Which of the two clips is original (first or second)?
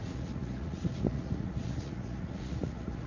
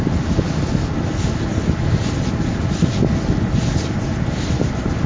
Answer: second